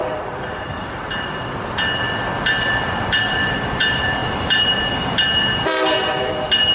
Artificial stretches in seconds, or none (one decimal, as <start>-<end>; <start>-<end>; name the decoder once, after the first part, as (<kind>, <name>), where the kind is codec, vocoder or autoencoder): 0.0-2.5 (vocoder, BigVGAN v2)